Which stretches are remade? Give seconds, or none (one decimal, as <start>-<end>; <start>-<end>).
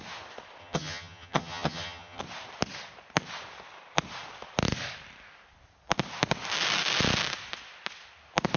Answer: 0.6-2.2